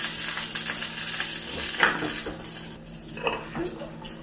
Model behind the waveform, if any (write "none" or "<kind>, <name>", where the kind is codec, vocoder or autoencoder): none